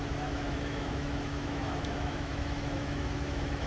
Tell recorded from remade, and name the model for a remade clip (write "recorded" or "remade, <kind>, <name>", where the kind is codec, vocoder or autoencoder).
remade, autoencoder, DAC-VAE